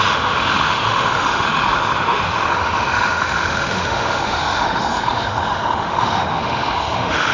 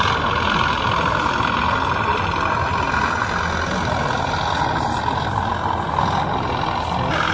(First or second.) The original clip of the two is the second